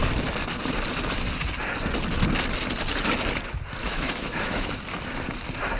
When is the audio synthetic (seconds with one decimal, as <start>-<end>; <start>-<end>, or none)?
3.8-4.7